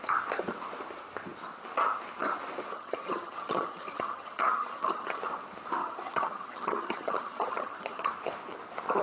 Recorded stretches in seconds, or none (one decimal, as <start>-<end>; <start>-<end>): 0.0-2.7; 5.2-5.8; 8.1-9.0